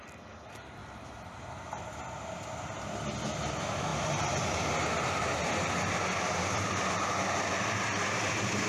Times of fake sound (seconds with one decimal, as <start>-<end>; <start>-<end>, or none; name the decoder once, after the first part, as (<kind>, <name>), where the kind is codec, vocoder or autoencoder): none

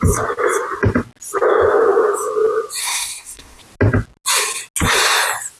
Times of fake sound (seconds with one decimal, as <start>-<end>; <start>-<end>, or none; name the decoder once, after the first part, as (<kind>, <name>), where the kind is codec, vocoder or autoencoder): 2.8-3.6 (codec, SNAC)

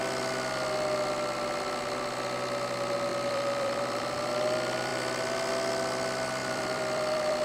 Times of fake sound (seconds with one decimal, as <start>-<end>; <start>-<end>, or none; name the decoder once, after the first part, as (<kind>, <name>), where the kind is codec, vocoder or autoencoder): 3.1-4.3 (vocoder, BigVGAN v2); 6.4-7.4